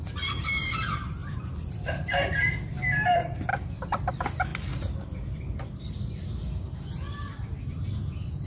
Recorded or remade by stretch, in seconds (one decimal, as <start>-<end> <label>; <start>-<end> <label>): 0.0-1.2 recorded; 1.2-2.4 remade; 2.4-3.5 recorded; 3.5-4.1 remade; 4.1-8.5 recorded